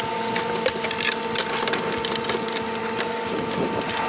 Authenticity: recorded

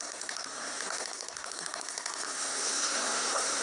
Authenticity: remade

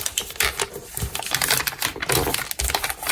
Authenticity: recorded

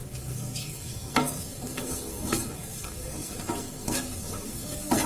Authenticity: remade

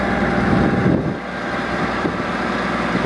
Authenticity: recorded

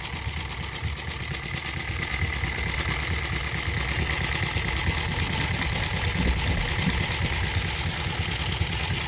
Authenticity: recorded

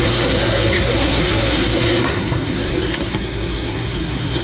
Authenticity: remade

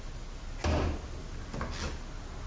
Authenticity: recorded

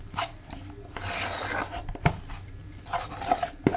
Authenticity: recorded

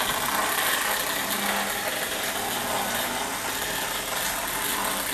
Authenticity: recorded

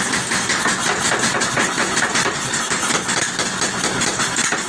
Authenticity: recorded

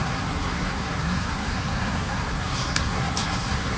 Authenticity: remade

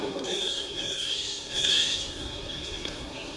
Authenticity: remade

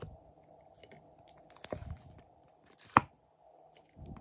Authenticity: recorded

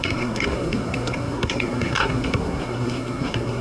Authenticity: remade